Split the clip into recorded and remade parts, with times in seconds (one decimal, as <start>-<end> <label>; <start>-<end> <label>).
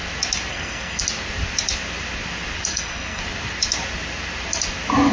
0.0-0.5 recorded; 0.5-1.0 remade; 1.0-2.7 recorded; 2.7-3.2 remade; 3.2-5.1 recorded